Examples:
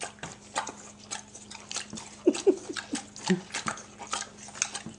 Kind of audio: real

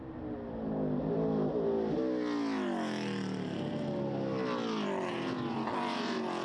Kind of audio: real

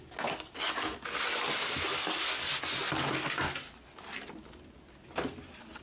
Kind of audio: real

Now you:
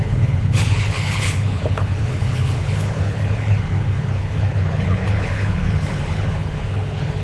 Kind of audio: fake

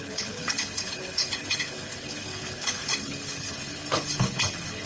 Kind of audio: fake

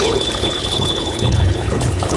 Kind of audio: fake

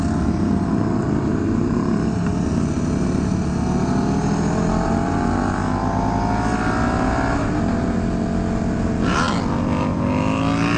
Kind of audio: real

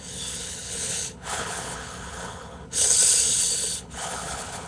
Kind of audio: fake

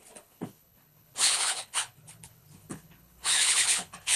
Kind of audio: fake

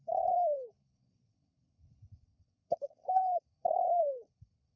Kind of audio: fake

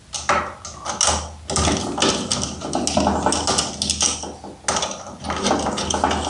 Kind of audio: real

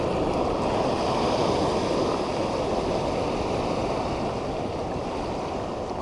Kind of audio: real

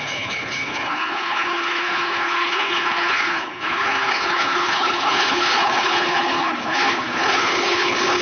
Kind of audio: fake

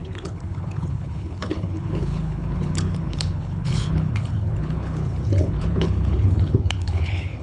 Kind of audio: fake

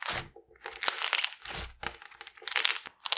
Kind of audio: real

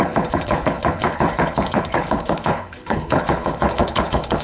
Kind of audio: fake